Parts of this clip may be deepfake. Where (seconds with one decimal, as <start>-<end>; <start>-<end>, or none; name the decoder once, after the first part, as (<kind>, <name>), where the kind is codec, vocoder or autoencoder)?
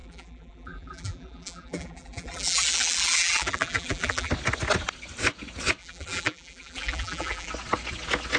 0.0-4.3 (vocoder, BigVGAN v2); 5.8-7.5